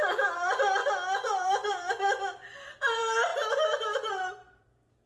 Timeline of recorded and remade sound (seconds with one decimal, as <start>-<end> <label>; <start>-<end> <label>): 0.0-0.8 remade; 0.8-1.4 recorded; 1.4-5.1 remade